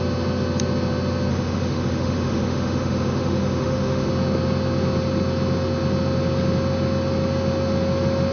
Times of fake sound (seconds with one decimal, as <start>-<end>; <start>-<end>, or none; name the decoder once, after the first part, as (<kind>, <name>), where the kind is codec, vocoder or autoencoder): 1.3-4.1 (autoencoder, DAC-VAE)

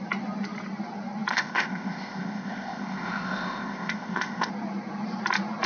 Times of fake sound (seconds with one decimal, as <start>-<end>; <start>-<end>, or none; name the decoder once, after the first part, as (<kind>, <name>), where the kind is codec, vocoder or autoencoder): 1.3-4.5 (codec, ZipCodec)

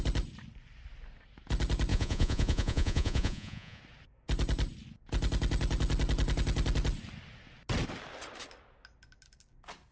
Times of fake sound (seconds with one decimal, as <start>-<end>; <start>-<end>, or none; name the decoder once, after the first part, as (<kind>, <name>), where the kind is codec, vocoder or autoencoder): 1.9-3.8 (vocoder, Vocos)

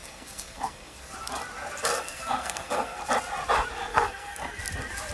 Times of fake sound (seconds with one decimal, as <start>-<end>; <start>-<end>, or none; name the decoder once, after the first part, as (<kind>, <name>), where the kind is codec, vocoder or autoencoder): 0.0-1.1 (codec, SNAC); 1.9-3.0; 3.9-4.6

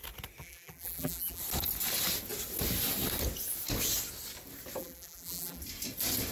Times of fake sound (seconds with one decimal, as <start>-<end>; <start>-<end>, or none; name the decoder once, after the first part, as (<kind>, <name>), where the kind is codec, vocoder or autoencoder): 0.4-1.4 (vocoder, BigVGAN v2); 4.8-5.6